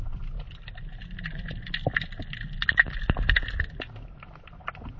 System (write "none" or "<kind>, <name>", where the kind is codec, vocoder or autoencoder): none